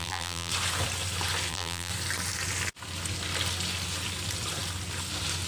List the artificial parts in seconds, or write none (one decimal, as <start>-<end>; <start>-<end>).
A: 0.0-0.5; 1.5-1.9